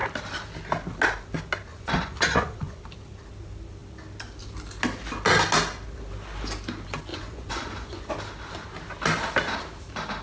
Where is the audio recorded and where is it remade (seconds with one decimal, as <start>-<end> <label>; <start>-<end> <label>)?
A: 0.0-1.7 recorded; 1.7-2.8 remade; 2.8-7.1 recorded; 7.1-8.1 remade; 8.1-10.2 recorded